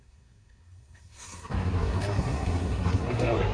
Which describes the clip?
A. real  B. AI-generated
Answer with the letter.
B